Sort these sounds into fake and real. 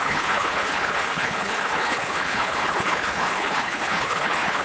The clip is fake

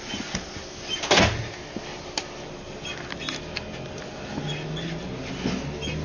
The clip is real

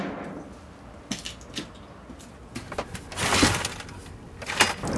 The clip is real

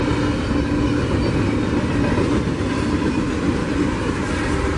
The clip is real